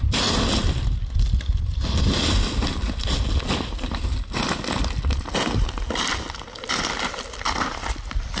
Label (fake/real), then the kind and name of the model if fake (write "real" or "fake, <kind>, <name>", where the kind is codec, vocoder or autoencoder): real